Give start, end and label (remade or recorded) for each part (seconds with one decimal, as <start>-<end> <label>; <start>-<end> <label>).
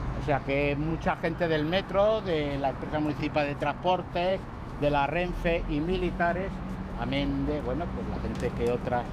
0.0-0.9 remade; 0.9-1.8 recorded; 1.8-3.2 remade; 3.2-3.9 recorded; 3.9-9.1 remade